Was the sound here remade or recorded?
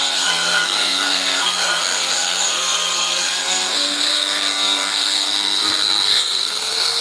remade